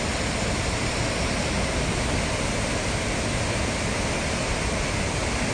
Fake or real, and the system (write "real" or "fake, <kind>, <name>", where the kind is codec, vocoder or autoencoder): real